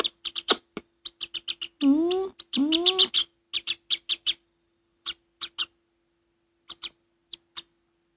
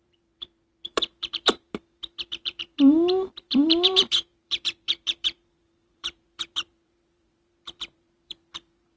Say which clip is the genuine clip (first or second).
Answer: first